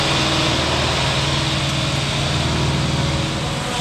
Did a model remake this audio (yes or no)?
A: no